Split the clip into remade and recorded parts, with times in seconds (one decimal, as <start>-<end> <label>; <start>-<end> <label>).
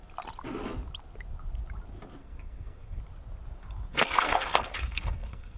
0.0-2.2 recorded; 2.2-3.0 remade; 3.0-3.9 recorded; 3.9-5.6 remade